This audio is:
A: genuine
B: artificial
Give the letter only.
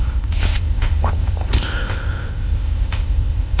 B